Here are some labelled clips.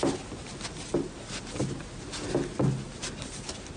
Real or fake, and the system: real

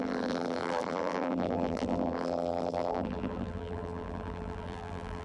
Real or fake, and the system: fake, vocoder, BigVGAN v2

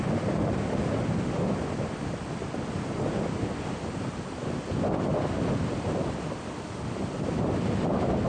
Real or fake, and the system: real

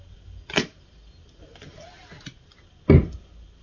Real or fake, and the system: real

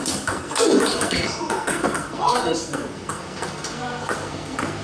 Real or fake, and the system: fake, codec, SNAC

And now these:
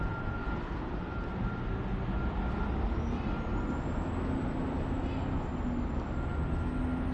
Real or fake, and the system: real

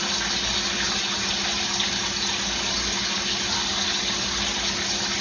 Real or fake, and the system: real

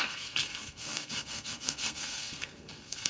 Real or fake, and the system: fake, codec, SNAC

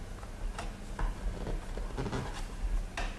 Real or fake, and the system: real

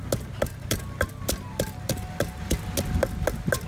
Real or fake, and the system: real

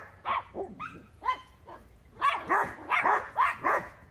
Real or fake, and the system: fake, vocoder, Vocos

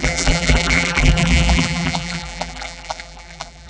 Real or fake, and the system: fake, vocoder, BigVGAN v2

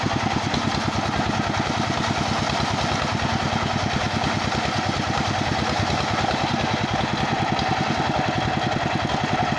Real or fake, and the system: real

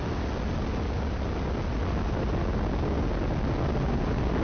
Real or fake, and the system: real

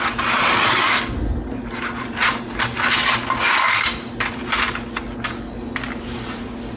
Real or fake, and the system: real